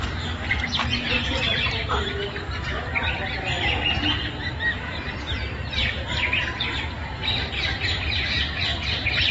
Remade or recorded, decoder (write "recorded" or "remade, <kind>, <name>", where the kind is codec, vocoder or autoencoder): recorded